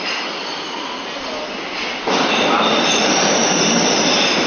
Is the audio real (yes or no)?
yes